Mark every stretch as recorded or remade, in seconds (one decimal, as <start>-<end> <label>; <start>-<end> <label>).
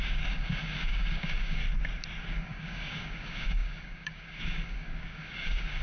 0.0-1.6 remade; 1.6-2.2 recorded; 2.2-5.8 remade